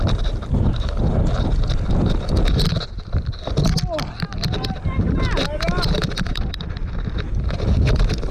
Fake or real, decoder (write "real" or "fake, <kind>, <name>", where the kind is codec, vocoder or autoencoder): real